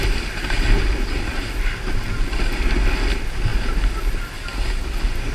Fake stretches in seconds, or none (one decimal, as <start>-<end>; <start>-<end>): none